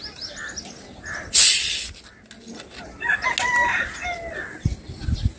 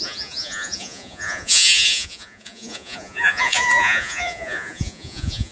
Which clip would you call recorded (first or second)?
first